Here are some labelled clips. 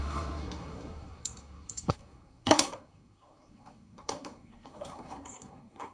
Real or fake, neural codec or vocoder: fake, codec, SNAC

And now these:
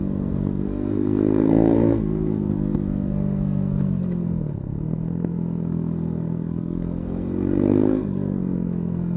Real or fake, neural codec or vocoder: fake, codec, SNAC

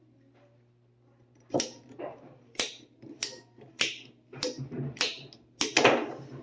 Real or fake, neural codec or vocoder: real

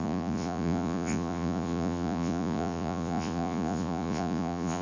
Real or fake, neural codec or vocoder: fake, vocoder, Vocos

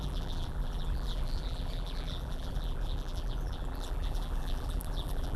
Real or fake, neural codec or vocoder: fake, vocoder, BigVGAN v2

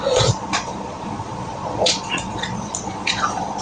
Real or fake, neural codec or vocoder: fake, vocoder, Vocos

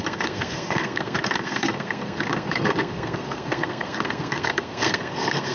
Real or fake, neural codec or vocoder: fake, codec, SNAC